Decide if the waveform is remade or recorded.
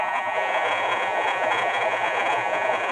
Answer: remade